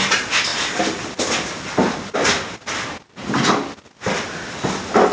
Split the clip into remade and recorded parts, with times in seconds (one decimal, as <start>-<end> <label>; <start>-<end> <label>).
0.0-5.1 recorded